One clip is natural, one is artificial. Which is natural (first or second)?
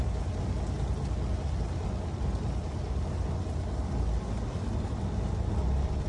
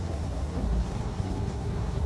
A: first